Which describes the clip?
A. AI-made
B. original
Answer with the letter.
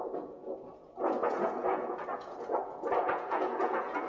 A